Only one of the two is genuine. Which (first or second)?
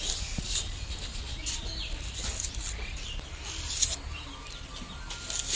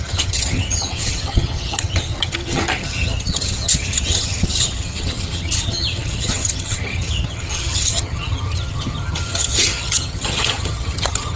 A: first